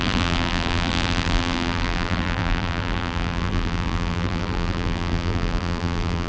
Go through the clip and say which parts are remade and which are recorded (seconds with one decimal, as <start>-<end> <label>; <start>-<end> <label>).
0.0-6.3 remade